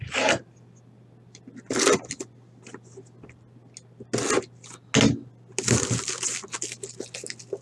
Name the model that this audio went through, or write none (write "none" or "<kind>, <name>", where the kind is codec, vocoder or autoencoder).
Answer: none